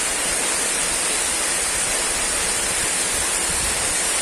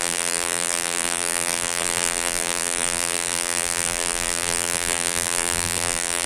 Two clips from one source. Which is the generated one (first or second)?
second